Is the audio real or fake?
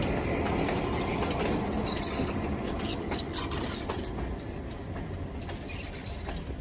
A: real